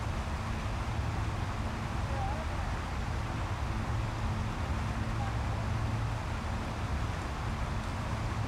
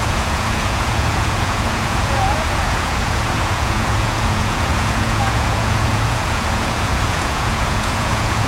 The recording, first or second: first